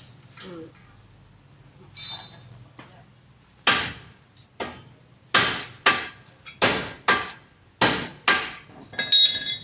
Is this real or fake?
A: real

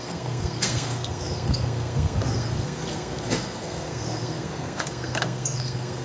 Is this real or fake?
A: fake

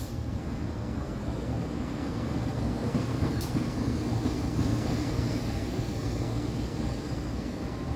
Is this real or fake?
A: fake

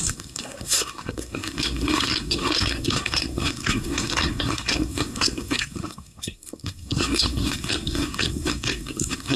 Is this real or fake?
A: fake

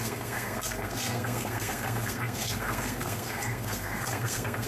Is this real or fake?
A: fake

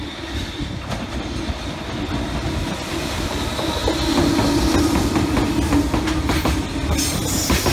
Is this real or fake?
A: real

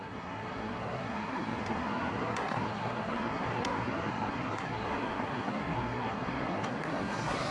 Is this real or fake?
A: fake